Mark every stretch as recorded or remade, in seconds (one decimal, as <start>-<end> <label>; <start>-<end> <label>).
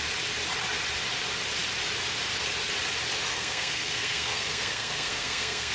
0.0-3.3 recorded; 3.3-5.7 remade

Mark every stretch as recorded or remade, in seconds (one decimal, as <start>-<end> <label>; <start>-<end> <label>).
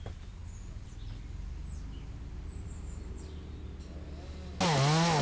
0.0-5.2 recorded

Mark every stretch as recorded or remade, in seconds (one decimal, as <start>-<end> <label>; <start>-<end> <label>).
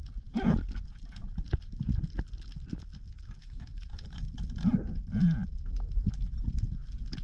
0.0-3.4 recorded; 3.4-4.3 remade; 4.3-7.2 recorded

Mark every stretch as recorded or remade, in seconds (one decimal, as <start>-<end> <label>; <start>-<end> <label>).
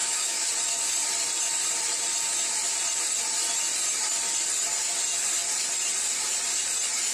0.0-0.5 remade; 0.5-7.1 recorded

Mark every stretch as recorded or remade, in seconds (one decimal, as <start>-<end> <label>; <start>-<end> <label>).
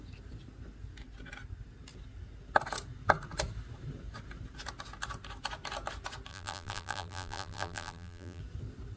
0.0-6.3 recorded; 6.3-8.4 remade; 8.4-9.0 recorded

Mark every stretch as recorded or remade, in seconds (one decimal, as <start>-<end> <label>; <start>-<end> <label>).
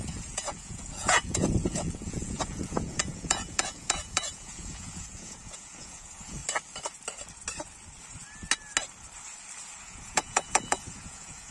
0.0-6.4 remade; 6.4-9.8 recorded; 9.8-11.5 remade